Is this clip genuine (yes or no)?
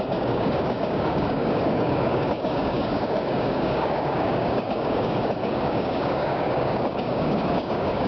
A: no